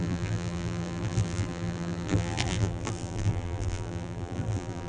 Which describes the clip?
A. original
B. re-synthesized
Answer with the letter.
B